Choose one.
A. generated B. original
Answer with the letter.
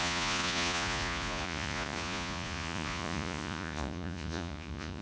A